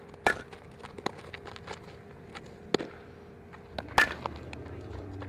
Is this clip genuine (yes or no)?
yes